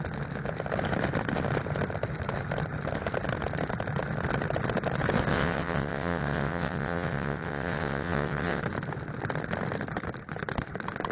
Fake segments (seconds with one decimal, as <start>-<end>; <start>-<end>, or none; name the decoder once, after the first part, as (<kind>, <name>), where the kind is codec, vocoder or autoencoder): 5.3-8.6 (vocoder, WaveNeXt)